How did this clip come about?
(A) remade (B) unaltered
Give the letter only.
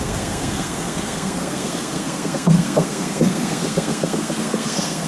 A